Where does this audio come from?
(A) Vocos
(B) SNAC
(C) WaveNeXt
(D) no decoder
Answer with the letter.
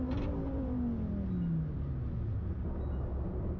D